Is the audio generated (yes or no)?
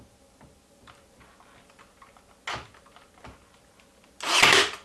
no